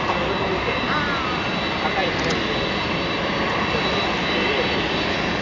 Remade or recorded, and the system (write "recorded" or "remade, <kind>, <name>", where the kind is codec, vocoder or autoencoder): recorded